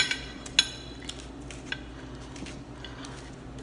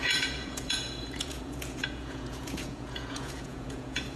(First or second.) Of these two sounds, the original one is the first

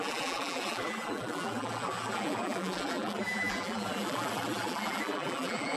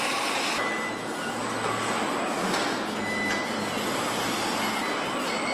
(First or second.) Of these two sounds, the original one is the second